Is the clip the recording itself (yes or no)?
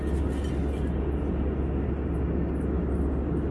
yes